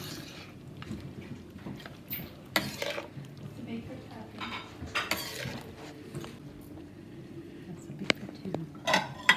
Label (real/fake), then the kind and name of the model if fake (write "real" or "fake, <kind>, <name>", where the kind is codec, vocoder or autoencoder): real